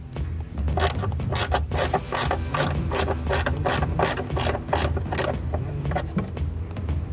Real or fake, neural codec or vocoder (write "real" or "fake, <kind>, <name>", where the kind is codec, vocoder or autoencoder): real